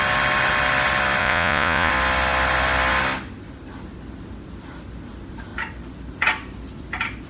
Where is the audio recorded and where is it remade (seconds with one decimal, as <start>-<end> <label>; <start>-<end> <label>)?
0.0-1.2 recorded; 1.2-1.9 remade; 1.9-7.3 recorded